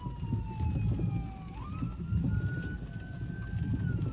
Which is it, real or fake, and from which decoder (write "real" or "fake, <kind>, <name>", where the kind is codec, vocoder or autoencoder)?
real